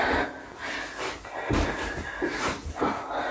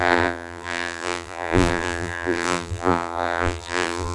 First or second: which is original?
first